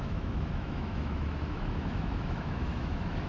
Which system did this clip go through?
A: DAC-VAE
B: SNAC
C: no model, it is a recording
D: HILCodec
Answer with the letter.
A